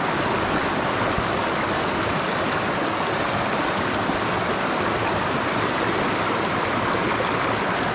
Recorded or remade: recorded